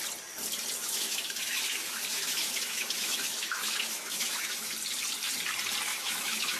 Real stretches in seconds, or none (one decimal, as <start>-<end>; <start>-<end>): 0.0-0.8; 4.7-5.9